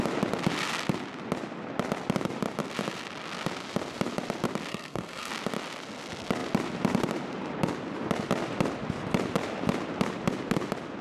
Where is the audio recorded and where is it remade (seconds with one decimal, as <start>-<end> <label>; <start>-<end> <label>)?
0.0-4.7 recorded; 4.7-5.3 remade; 5.3-11.0 recorded

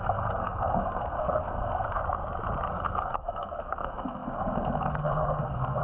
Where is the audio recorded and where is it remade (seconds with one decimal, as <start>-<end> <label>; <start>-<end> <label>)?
0.0-2.0 remade; 2.0-2.7 recorded; 2.7-5.8 remade

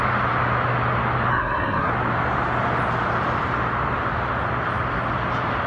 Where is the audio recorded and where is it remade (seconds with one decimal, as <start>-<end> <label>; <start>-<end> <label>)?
0.0-1.3 recorded; 1.3-1.9 remade; 1.9-5.7 recorded

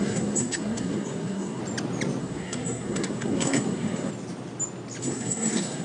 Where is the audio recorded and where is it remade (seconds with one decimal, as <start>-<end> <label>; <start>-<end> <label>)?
0.0-1.6 remade; 1.6-2.2 recorded; 2.2-4.1 remade; 4.1-5.0 recorded; 5.0-5.8 remade

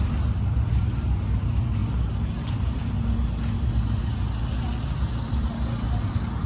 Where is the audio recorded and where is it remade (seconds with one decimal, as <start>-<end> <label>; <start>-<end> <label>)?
0.0-6.5 recorded

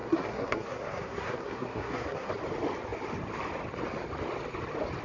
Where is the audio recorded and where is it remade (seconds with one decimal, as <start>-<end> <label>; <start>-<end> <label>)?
0.0-2.3 remade; 2.3-5.0 recorded

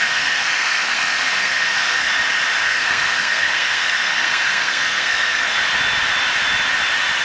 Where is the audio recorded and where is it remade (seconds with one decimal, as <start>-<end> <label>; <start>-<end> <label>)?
0.0-2.1 remade; 2.1-2.6 recorded; 2.6-5.6 remade; 5.6-7.2 recorded

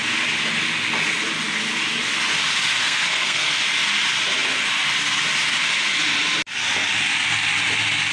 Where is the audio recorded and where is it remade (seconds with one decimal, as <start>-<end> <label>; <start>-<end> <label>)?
0.0-2.8 recorded; 2.8-3.6 remade; 3.6-8.1 recorded